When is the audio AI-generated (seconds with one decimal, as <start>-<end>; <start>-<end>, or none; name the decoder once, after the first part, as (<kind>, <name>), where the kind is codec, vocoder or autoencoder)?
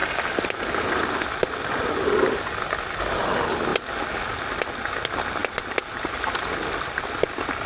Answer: 0.0-3.2 (vocoder, BigVGAN v2); 5.4-7.3